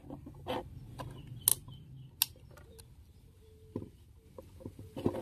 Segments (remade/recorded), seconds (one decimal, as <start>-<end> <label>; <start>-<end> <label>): 0.0-5.2 recorded